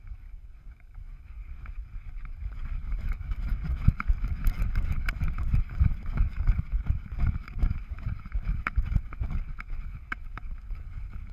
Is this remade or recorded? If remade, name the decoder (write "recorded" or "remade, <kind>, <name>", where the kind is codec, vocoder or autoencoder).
remade, codec, DAC